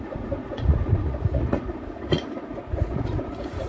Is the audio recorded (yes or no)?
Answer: no